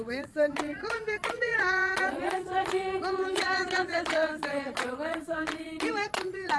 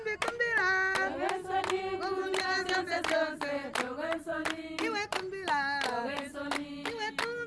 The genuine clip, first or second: second